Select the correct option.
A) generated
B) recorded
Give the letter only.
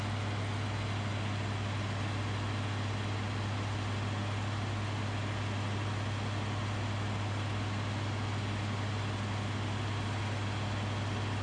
B